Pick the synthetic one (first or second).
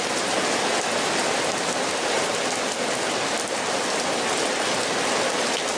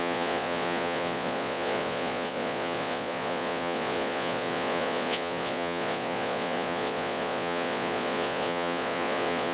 second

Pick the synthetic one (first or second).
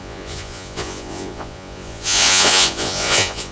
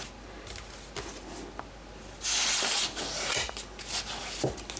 first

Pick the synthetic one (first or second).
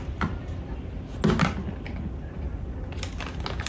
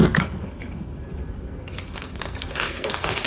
second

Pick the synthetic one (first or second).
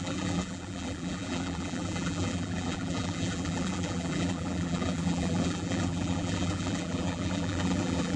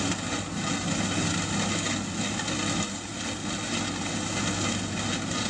first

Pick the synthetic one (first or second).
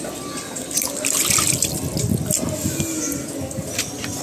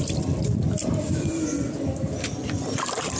second